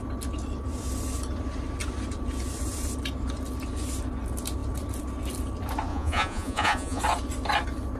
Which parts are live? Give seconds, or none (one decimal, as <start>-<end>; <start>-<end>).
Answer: 0.0-5.9; 7.0-8.0